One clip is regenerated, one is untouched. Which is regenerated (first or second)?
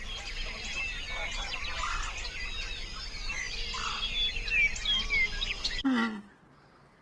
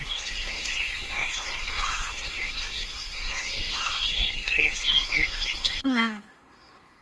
second